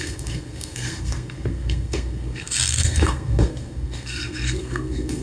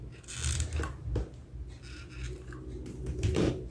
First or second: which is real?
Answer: second